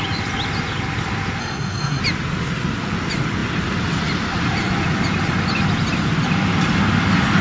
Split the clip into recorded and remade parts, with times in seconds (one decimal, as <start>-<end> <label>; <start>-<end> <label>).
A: 0.0-1.4 recorded; 1.4-2.0 remade; 2.0-7.4 recorded